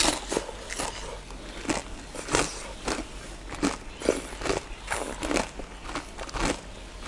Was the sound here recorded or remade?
recorded